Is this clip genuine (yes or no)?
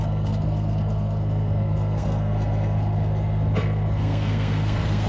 no